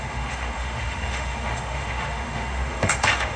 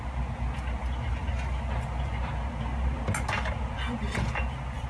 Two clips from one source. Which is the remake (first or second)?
first